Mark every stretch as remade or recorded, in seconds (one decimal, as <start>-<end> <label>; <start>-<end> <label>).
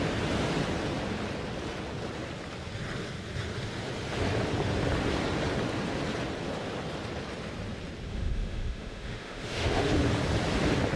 0.0-8.1 recorded; 8.1-9.9 remade; 9.9-11.0 recorded